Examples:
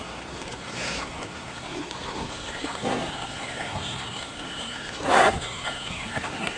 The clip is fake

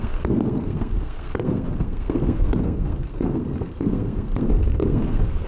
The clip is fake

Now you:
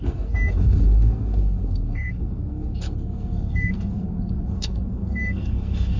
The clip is fake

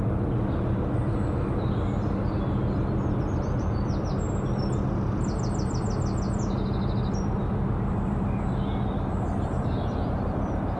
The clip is real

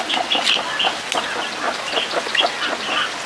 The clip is real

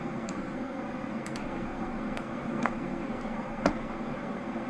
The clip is fake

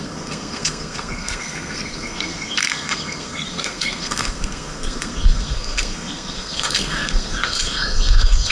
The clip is fake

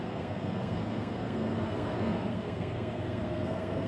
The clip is fake